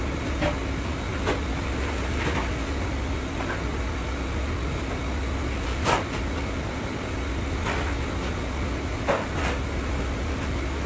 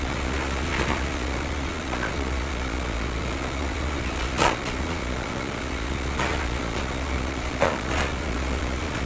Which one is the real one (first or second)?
first